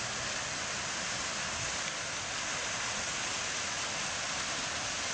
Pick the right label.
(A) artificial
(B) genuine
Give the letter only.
B